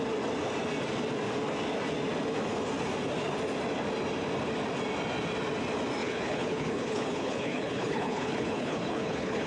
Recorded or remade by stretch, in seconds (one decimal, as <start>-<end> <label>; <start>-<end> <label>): 0.0-6.0 recorded; 6.0-9.5 remade

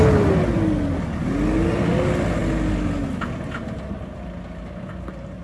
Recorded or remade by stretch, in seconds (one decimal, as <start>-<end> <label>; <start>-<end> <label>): 0.0-5.4 recorded

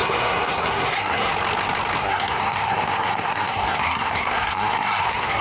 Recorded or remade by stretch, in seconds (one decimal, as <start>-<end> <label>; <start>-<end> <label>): 0.0-1.3 remade; 1.3-2.0 recorded; 2.0-5.4 remade